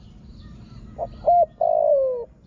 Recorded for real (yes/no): yes